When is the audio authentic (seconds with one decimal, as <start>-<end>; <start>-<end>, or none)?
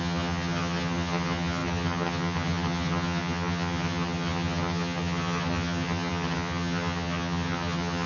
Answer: none